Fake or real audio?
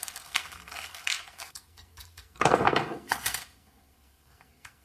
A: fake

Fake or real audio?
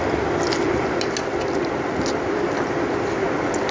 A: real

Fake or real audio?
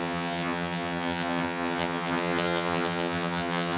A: fake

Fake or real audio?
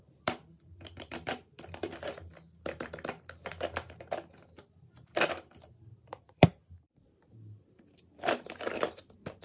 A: fake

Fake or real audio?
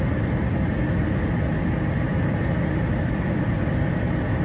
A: real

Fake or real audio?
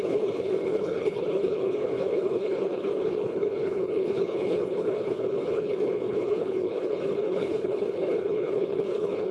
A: fake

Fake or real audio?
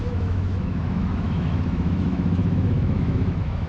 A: fake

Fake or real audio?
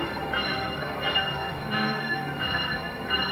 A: fake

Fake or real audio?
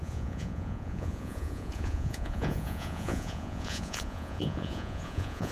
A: fake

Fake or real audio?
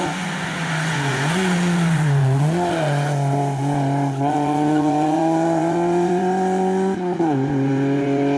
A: fake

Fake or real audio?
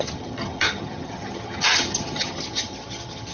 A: fake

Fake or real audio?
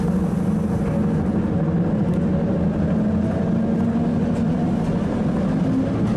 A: real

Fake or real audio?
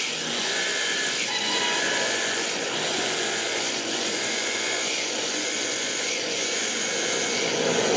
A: fake